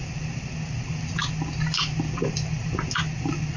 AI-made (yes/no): no